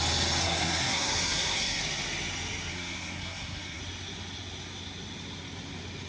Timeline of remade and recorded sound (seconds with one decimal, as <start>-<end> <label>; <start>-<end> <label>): 0.0-0.4 recorded; 0.4-1.8 remade; 1.8-2.7 recorded; 2.7-3.8 remade; 3.8-6.1 recorded